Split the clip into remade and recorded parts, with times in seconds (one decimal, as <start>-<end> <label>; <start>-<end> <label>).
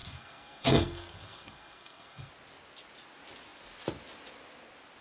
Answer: 0.0-2.3 remade; 2.3-5.0 recorded